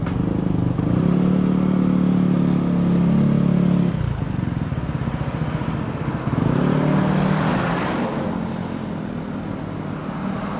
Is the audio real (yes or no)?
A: yes